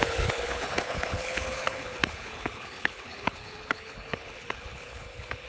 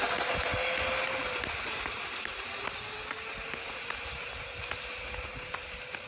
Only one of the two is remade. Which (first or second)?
first